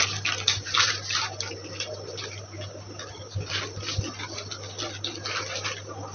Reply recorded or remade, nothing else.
recorded